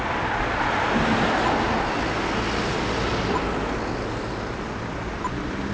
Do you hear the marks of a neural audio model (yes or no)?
no